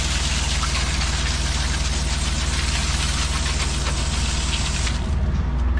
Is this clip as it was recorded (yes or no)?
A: yes